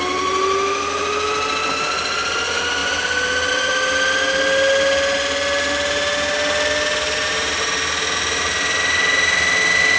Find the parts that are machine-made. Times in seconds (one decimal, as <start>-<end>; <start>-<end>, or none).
none